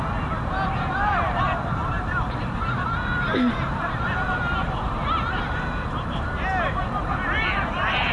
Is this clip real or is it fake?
fake